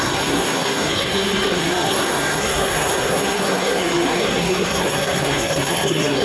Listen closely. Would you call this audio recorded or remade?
remade